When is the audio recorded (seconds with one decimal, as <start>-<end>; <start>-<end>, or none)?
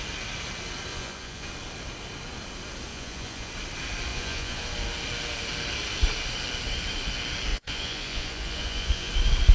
0.0-0.9; 1.5-2.9; 3.5-4.1; 4.6-7.5; 9.1-9.5